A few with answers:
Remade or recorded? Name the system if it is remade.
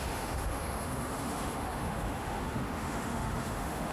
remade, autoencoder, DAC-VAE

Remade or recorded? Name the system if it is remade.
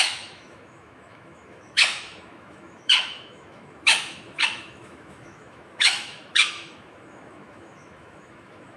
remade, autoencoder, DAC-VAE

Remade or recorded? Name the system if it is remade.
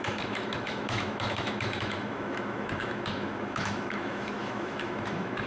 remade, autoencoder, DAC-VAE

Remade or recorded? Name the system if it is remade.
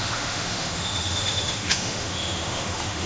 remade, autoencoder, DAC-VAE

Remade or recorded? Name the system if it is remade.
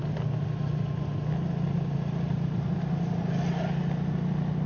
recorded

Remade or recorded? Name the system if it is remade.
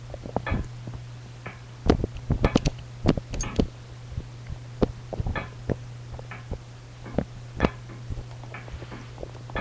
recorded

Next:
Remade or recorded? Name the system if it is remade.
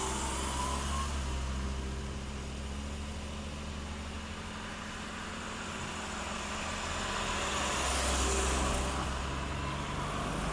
recorded